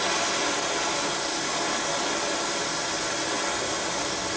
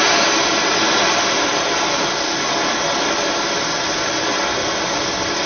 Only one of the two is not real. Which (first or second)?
second